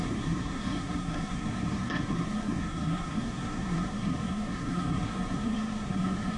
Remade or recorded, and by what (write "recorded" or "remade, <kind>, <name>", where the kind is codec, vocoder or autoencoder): remade, codec, SNAC